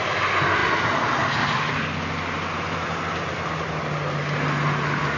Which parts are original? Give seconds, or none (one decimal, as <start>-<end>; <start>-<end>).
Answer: 0.0-5.2